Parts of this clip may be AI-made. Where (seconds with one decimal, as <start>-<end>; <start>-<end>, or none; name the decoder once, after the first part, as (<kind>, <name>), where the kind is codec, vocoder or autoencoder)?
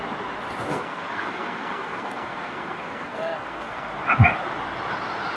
0.7-3.9 (codec, SNAC)